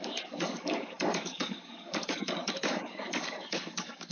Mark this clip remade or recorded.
remade